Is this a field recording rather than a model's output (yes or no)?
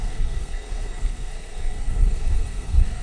no